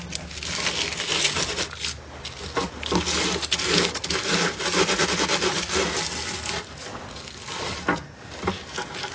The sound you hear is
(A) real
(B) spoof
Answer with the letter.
A